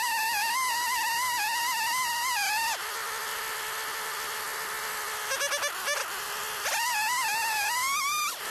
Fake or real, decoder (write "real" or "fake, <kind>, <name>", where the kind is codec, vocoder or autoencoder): real